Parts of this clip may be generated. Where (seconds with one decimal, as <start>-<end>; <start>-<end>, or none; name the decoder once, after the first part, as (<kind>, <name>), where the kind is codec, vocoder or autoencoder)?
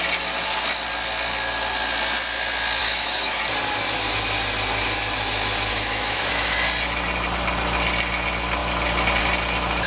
2.8-3.4 (autoencoder, DAC-VAE); 5.7-6.3